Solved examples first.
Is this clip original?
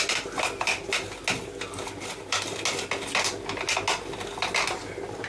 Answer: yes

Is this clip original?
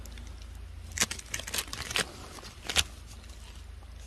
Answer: yes